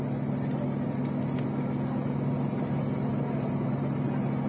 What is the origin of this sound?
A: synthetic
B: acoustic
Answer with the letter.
B